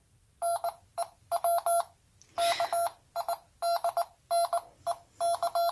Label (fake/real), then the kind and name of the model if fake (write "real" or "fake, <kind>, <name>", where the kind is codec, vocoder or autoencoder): real